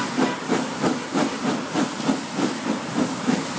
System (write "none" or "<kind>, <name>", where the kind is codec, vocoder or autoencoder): none